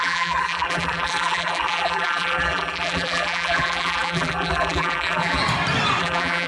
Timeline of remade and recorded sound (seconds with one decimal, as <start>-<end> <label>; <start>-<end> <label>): 0.0-5.4 remade; 5.4-6.0 recorded; 6.0-6.5 remade